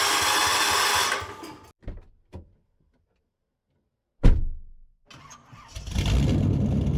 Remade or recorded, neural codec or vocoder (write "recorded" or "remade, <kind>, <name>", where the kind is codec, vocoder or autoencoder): recorded